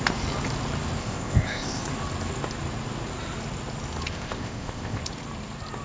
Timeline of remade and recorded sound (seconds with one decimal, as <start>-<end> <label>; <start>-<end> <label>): 0.0-1.0 recorded; 1.0-1.8 remade; 1.8-4.1 recorded; 4.1-5.0 remade; 5.0-5.8 recorded